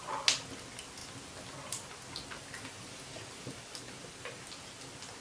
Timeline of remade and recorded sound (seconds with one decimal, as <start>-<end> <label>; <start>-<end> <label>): 0.0-5.2 recorded